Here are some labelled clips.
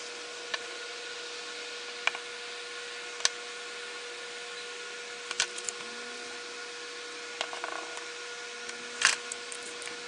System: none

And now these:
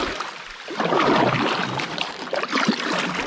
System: vocoder, BigVGAN v2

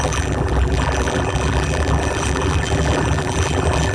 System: vocoder, BigVGAN v2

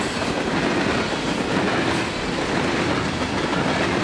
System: none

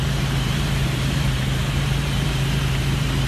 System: vocoder, BigVGAN v2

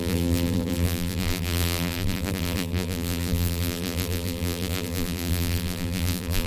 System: vocoder, BigVGAN v2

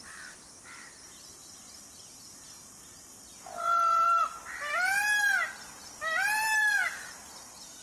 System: vocoder, BigVGAN v2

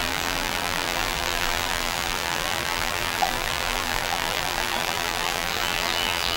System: vocoder, BigVGAN v2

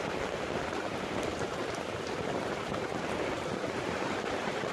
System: vocoder, BigVGAN v2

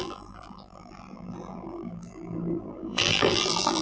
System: vocoder, BigVGAN v2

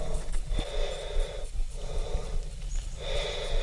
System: vocoder, BigVGAN v2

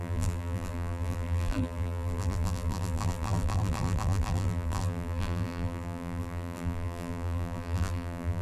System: vocoder, BigVGAN v2